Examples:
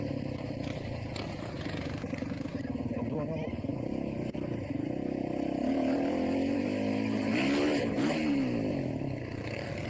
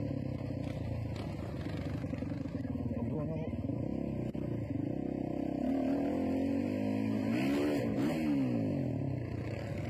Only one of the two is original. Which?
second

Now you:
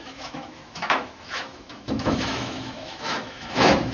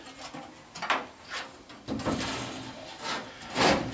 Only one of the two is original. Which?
second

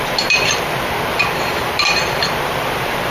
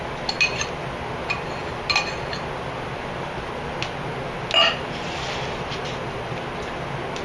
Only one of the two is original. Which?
second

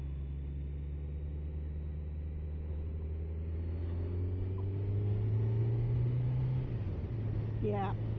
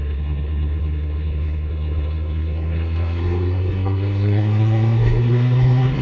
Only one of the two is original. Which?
first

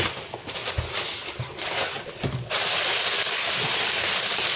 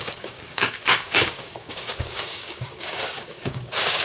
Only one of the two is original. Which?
first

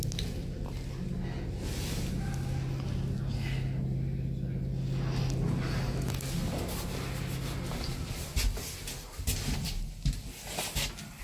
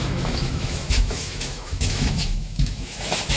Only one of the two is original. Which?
first